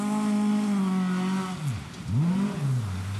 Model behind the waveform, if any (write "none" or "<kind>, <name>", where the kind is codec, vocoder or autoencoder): none